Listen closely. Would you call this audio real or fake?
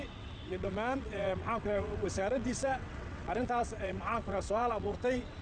fake